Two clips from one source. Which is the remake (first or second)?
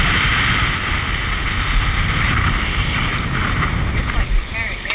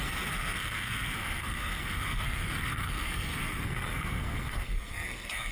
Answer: second